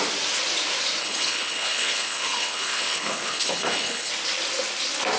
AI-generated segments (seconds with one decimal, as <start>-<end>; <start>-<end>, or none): 1.0-4.1